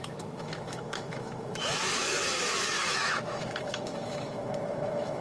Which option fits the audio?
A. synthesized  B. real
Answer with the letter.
A